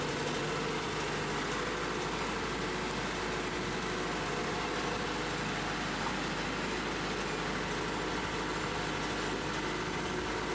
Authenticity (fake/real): real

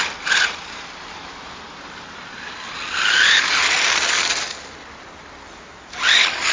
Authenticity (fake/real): real